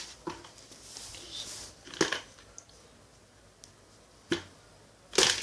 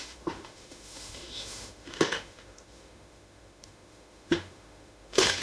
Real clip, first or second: first